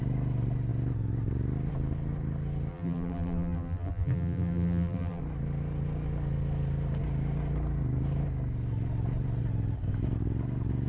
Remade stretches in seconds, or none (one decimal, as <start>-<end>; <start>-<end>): 2.7-5.2